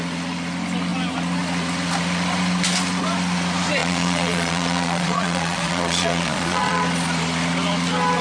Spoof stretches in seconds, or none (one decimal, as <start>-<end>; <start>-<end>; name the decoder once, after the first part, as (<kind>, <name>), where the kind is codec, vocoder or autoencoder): 3.8-6.8 (vocoder, Vocos)